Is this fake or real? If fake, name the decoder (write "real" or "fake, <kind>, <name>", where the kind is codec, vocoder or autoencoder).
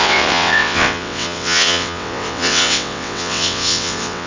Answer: fake, vocoder, WaveNeXt